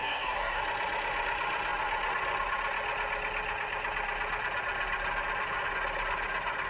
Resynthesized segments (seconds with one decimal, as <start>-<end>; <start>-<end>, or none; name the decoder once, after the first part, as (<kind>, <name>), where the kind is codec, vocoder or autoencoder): 0.0-0.6 (codec, SNAC)